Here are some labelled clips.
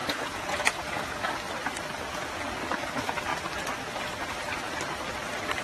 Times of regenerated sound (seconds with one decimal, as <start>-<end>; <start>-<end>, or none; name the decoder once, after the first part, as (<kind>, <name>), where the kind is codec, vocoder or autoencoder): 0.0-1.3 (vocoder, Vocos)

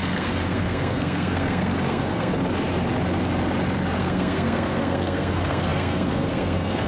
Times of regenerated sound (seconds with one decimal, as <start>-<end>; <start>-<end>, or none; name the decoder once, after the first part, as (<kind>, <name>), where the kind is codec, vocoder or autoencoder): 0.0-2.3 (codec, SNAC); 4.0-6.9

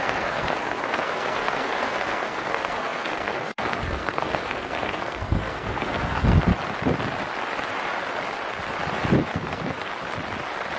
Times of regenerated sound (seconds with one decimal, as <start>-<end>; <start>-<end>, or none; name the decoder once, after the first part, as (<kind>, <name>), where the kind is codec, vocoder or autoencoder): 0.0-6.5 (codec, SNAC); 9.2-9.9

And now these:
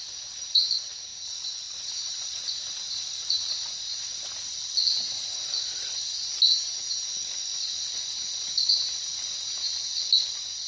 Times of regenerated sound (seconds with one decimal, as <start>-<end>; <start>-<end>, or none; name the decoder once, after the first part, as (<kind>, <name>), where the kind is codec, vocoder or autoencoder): 4.5-5.9 (vocoder, BigVGAN v2)

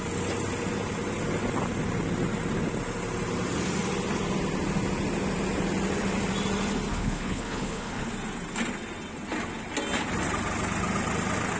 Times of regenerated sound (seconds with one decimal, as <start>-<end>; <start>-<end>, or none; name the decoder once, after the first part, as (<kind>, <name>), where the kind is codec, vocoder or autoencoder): 6.9-8.1 (codec, HILCodec)